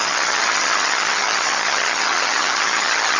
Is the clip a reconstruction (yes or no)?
yes